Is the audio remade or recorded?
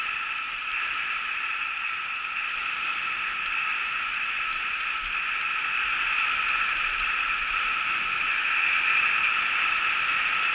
recorded